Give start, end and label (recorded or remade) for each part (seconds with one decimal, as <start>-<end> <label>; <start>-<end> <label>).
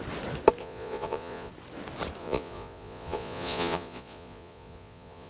0.0-0.6 recorded; 0.6-1.5 remade; 1.5-2.2 recorded; 2.2-5.3 remade